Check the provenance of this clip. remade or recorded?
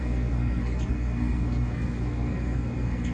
remade